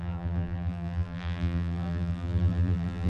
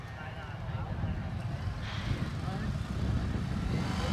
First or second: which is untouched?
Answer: second